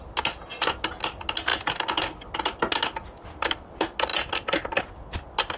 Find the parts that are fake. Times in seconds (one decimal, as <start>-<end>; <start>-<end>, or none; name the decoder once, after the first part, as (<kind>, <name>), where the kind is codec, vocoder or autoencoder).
none